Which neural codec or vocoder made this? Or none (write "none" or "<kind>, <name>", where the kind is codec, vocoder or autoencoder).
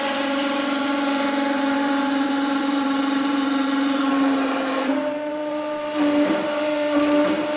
vocoder, BigVGAN v2